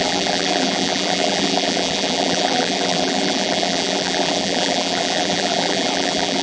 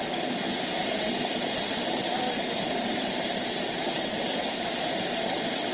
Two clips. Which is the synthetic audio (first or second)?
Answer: first